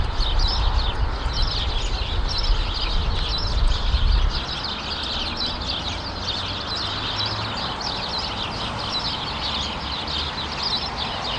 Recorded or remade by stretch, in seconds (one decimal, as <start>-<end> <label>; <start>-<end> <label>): 0.0-11.4 recorded